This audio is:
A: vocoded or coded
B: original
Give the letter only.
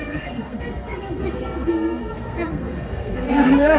A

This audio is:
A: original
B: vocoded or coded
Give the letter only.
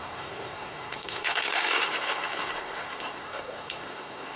B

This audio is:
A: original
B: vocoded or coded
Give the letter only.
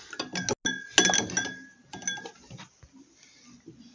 A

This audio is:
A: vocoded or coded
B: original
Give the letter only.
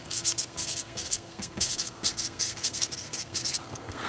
A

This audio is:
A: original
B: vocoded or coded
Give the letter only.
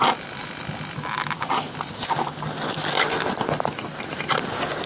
A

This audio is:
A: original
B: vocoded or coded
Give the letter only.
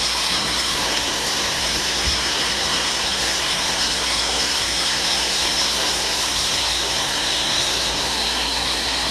B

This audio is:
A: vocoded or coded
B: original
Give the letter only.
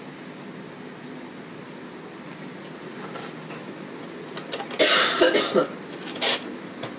B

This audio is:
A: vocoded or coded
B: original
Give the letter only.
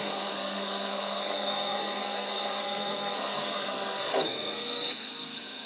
A